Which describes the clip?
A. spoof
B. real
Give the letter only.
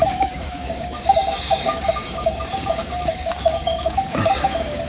A